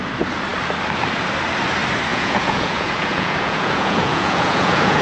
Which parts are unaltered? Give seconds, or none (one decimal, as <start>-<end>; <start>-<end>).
0.0-2.1